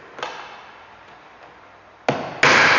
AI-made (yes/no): no